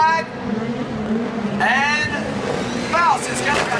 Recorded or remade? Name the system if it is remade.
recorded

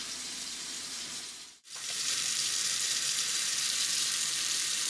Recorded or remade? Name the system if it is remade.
remade, vocoder, BigVGAN v2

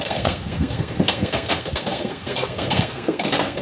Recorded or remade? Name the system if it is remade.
remade, codec, SNAC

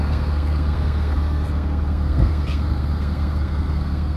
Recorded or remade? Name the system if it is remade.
remade, codec, SNAC